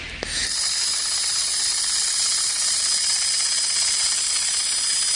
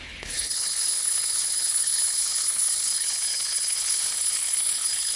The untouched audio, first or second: first